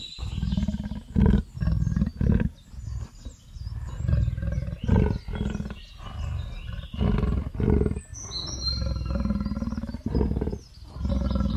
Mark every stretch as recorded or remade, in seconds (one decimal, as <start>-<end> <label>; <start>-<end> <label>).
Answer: 0.0-11.6 recorded